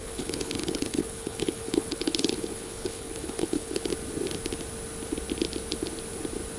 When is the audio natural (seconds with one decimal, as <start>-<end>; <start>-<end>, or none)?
3.9-6.6